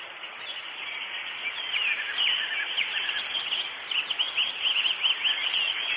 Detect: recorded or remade recorded